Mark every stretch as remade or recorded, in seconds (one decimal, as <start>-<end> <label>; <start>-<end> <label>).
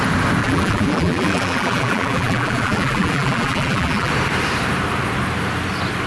0.0-0.4 recorded; 0.4-4.1 remade; 4.1-6.1 recorded